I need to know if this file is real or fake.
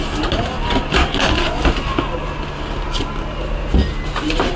real